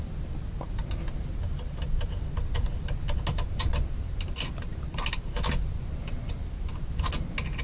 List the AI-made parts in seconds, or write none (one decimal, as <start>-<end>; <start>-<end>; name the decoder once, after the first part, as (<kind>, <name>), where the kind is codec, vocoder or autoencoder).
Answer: none